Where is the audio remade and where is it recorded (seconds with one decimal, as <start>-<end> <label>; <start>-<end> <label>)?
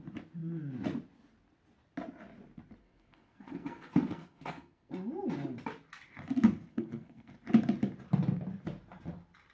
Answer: 0.0-2.8 recorded; 2.8-4.9 remade; 4.9-6.7 recorded; 6.7-7.3 remade; 7.3-9.5 recorded